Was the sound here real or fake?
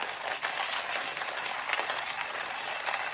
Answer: fake